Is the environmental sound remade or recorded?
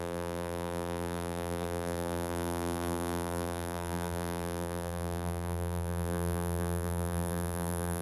remade